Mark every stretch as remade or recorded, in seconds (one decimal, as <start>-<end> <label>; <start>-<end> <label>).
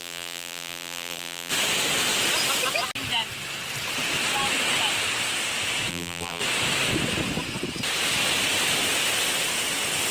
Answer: 0.0-1.5 remade; 1.5-5.9 recorded; 5.9-6.4 remade; 6.4-10.1 recorded